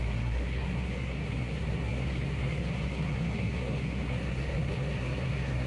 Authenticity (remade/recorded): remade